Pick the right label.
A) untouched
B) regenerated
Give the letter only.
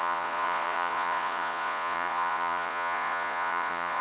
B